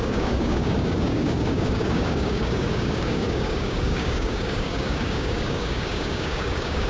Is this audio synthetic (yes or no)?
yes